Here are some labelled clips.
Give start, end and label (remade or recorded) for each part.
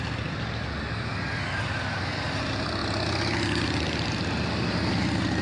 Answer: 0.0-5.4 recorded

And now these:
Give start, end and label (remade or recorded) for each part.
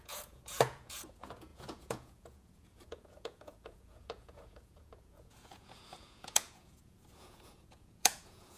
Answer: 0.0-8.6 remade